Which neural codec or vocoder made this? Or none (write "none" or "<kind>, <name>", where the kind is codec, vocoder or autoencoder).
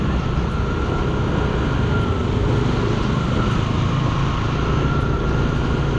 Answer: none